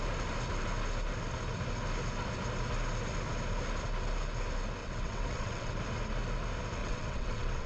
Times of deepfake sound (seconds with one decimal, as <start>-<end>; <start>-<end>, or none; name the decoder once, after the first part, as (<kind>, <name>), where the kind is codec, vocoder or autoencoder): 4.8-5.7 (vocoder, WaveNeXt); 6.8-7.7